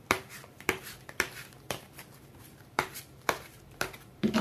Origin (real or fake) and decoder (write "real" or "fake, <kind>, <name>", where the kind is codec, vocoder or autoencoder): fake, vocoder, BigVGAN v2